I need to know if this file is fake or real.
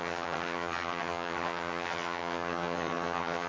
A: fake